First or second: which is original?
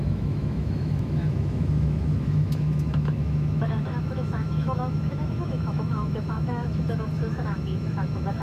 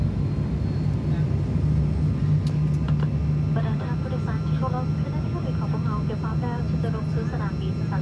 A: second